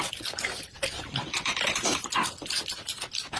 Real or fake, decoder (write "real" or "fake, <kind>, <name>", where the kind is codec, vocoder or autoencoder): real